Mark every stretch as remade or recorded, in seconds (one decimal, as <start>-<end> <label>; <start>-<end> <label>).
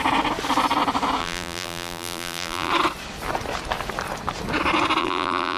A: 0.0-1.2 recorded; 1.2-2.7 remade; 2.7-5.0 recorded; 5.0-5.6 remade